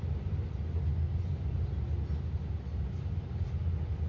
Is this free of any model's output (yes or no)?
yes